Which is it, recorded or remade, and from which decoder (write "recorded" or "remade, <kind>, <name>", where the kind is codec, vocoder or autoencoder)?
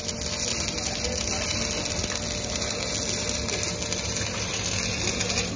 recorded